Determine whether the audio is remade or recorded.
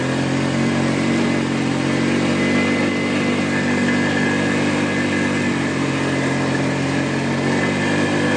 recorded